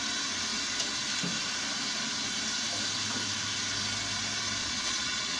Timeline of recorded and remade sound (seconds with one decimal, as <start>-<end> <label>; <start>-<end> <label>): 0.0-4.6 recorded; 4.6-5.4 remade